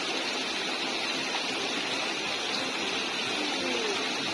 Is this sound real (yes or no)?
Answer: yes